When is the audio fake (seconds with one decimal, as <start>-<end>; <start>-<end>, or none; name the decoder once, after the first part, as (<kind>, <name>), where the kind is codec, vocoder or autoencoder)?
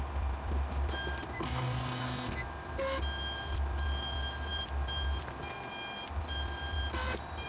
none